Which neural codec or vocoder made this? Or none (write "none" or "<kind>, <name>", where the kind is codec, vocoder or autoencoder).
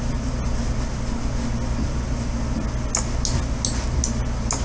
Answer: none